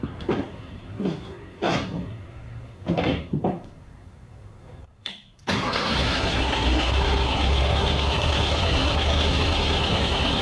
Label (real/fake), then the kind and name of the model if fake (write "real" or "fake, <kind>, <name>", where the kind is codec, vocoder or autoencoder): fake, codec, SNAC